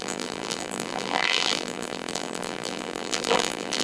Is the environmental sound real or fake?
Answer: fake